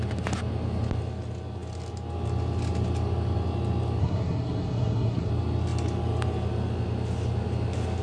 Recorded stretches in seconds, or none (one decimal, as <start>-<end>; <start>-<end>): 0.0-4.0; 5.3-8.0